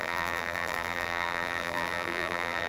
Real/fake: fake